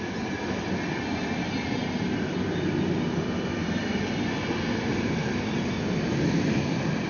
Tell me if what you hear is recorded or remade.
recorded